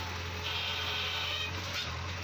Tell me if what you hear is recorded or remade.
recorded